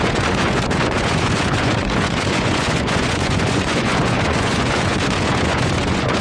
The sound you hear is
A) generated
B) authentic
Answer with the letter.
A